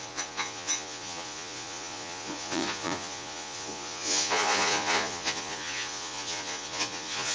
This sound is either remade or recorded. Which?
remade